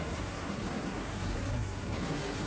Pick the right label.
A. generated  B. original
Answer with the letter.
A